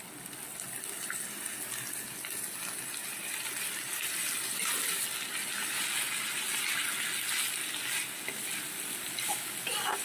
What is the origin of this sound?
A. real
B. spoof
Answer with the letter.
A